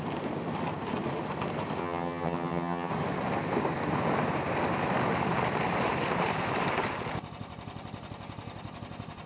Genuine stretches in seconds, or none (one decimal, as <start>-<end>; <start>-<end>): 0.0-1.8; 2.9-9.3